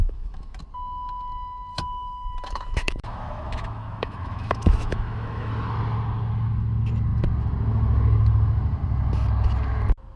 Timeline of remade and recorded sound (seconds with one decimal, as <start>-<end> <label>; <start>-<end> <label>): 0.0-0.6 remade; 0.6-1.7 recorded; 1.7-5.5 remade; 5.5-10.2 recorded